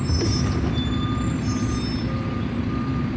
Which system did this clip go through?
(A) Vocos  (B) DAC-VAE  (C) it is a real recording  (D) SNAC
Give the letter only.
C